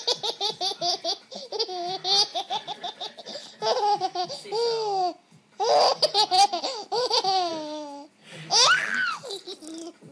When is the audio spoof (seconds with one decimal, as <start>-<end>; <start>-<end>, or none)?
none